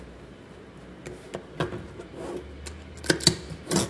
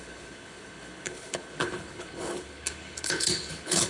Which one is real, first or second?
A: first